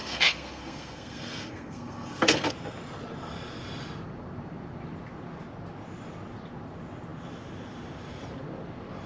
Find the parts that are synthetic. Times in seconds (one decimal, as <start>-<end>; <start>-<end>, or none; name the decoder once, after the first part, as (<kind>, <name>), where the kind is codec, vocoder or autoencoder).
0.0-2.5 (codec, SNAC)